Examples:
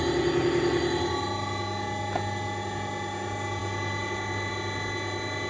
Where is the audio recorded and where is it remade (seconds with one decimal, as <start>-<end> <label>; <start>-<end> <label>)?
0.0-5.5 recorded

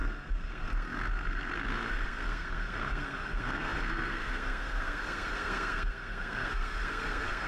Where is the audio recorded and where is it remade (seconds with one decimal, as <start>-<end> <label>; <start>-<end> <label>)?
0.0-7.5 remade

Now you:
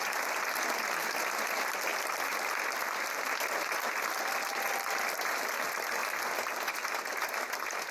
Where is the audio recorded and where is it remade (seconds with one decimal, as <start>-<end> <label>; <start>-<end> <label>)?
0.0-7.9 recorded